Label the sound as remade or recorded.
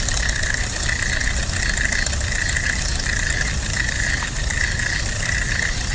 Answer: recorded